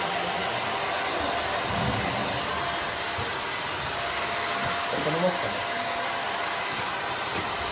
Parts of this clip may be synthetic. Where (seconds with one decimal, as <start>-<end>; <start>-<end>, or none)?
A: none